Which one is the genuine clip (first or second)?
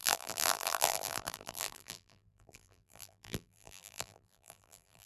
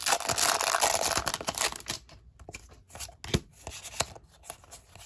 second